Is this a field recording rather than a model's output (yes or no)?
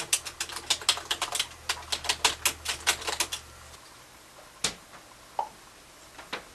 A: yes